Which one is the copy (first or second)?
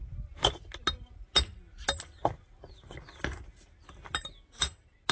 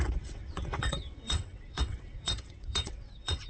second